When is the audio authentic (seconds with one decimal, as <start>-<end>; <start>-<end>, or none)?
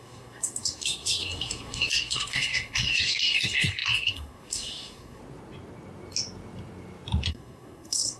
5.2-7.3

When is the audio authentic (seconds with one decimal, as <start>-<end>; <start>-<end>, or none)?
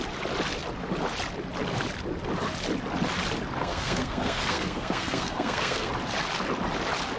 0.0-3.6; 5.9-7.2